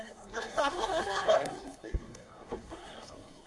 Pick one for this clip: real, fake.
fake